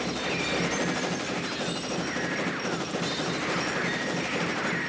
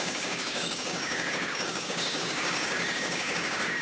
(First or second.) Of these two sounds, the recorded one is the first